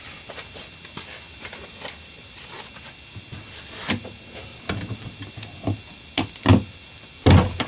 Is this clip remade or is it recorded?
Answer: recorded